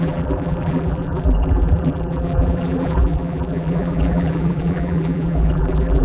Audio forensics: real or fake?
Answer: fake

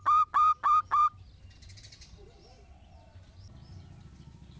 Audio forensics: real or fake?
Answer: real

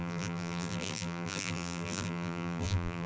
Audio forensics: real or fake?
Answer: fake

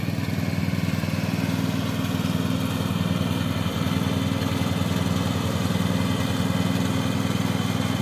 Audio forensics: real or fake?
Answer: real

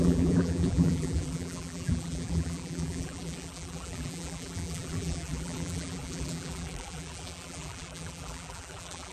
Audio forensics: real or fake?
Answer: fake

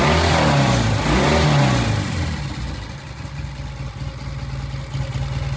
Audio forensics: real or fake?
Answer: real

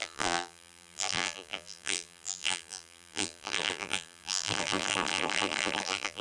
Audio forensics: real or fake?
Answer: fake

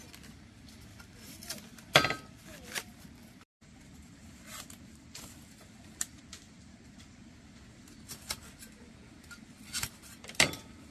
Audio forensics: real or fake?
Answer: fake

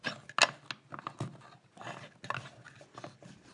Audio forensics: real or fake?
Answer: real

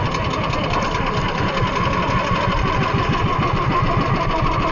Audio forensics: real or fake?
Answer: real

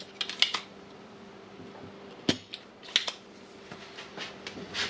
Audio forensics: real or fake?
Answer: real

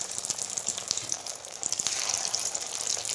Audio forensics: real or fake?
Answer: fake